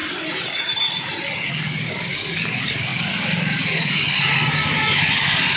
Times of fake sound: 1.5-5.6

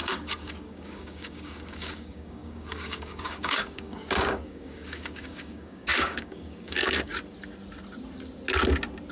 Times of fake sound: 0.0-7.1

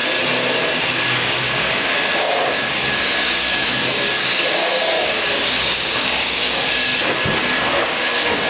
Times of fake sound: 0.9-6.9; 7.7-8.5

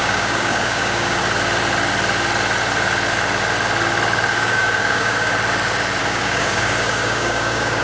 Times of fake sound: 0.0-1.2; 4.3-5.3; 6.0-7.8

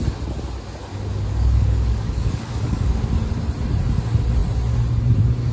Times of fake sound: 0.9-3.1

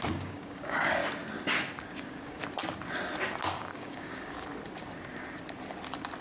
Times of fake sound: 0.0-1.0; 1.8-2.4; 3.6-4.5

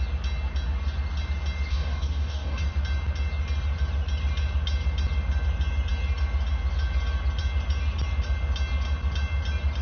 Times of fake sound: 1.7-2.6

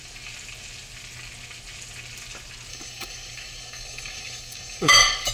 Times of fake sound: 2.7-5.3